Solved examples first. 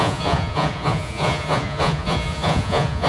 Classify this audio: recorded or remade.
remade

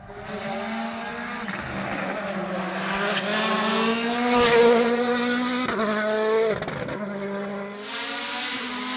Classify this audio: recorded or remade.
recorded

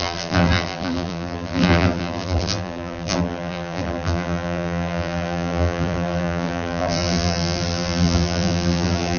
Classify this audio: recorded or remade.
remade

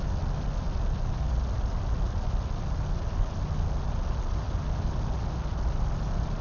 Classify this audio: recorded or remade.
recorded